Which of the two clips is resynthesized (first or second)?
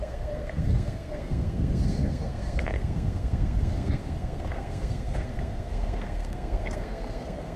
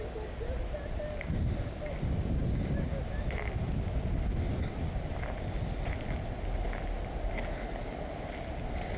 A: first